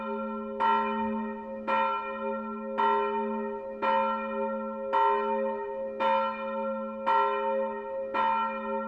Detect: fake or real real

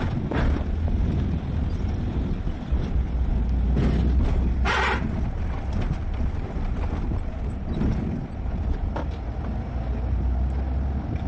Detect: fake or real real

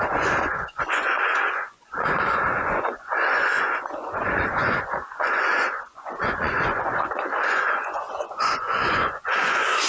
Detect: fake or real fake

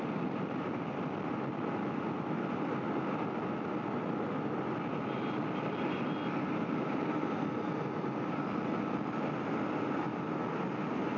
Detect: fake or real real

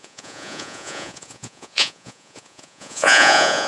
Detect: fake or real fake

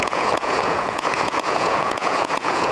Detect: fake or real fake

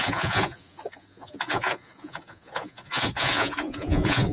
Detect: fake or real fake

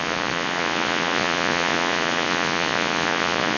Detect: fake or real fake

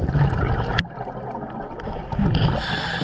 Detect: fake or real real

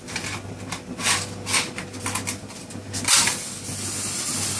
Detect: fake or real real